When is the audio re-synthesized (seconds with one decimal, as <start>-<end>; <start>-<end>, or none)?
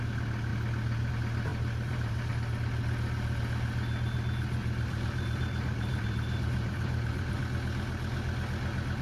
1.5-2.3; 4.6-7.4